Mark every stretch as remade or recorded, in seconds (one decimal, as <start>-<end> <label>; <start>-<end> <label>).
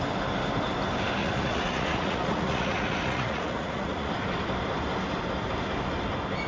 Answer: 0.0-1.2 recorded; 1.2-4.1 remade; 4.1-6.5 recorded